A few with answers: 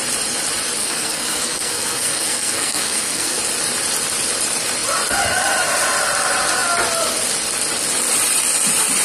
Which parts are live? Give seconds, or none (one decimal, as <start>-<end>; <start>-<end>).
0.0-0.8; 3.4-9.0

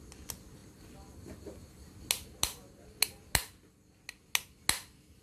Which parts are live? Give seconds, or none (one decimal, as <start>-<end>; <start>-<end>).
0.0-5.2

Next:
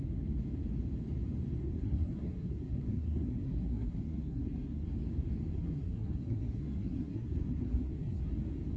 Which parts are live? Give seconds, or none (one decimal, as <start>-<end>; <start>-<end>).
0.0-1.6; 4.9-5.5; 8.2-8.8

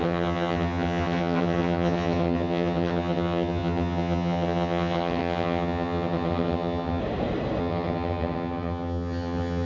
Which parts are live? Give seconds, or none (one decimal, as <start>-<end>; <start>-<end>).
7.0-7.6